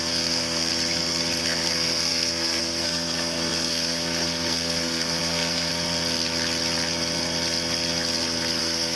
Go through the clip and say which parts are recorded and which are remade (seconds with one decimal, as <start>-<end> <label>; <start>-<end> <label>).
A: 0.0-0.7 remade; 0.7-1.4 recorded; 1.4-5.7 remade; 5.7-8.6 recorded; 8.6-9.0 remade